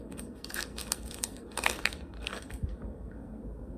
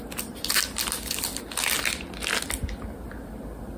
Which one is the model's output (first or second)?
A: first